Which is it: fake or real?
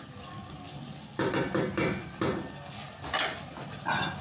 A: real